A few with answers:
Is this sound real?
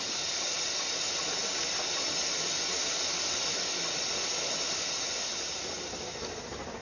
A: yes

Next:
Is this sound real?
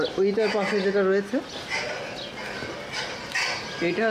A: yes